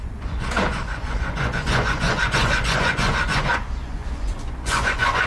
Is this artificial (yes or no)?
yes